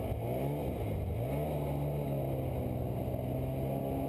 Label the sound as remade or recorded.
recorded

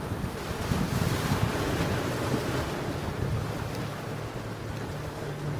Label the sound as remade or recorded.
recorded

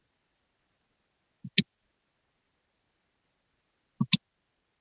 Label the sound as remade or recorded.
recorded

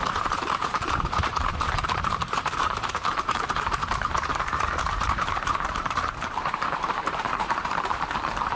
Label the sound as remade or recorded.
remade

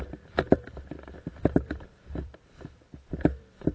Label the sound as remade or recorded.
remade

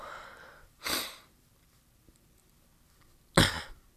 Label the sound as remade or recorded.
recorded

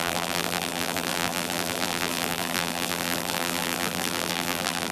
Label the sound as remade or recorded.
remade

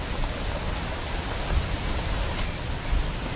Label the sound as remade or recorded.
remade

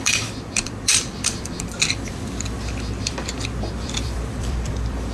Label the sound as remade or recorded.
remade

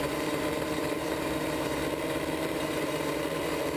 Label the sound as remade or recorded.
remade